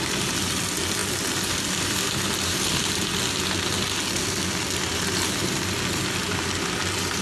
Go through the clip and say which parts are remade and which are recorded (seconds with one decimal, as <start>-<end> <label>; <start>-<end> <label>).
0.0-7.2 recorded